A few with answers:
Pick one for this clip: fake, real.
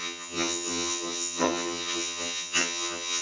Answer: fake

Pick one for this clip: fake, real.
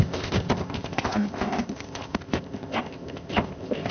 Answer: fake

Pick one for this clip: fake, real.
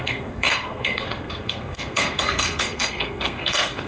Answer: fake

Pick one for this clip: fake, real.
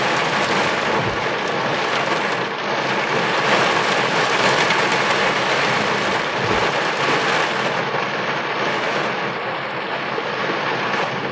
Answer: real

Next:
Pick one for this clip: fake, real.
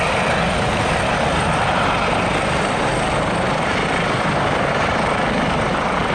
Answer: fake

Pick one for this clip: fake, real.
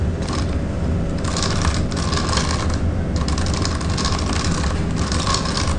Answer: real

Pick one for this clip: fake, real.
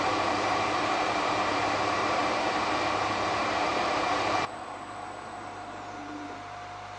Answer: fake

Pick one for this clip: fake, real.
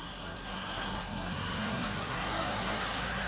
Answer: fake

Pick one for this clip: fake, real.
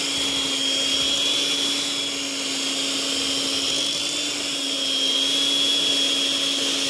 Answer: real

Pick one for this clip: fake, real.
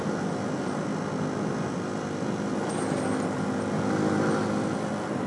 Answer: real